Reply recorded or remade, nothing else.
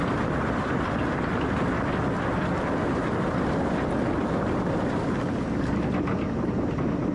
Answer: recorded